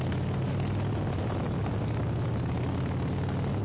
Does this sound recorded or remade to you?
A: recorded